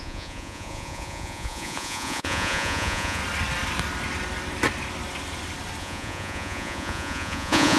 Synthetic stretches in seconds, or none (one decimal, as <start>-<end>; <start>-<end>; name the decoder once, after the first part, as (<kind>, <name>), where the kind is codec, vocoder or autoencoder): 0.0-3.2 (vocoder, Vocos); 5.8-7.8